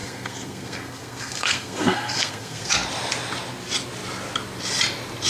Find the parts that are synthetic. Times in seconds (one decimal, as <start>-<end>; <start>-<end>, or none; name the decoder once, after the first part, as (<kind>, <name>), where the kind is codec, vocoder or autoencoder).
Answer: 0.0-2.7 (codec, SNAC)